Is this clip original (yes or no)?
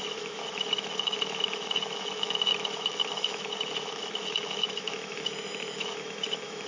no